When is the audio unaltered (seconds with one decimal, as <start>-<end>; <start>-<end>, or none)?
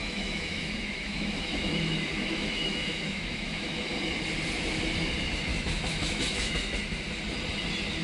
3.8-5.5; 6.5-8.0